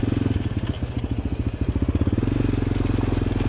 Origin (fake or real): real